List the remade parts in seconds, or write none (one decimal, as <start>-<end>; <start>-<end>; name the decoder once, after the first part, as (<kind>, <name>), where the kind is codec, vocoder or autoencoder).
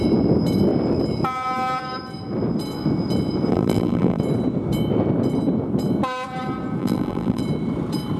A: 3.5-4.2 (vocoder, BigVGAN v2); 6.8-7.4